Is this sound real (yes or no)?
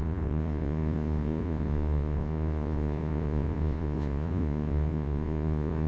no